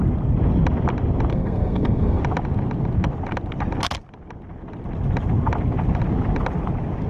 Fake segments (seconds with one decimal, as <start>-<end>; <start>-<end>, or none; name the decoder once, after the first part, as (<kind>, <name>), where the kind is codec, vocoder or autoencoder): 1.3-2.2 (codec, SNAC)